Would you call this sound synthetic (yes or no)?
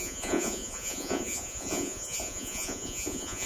yes